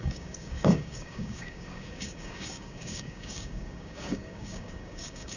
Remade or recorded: remade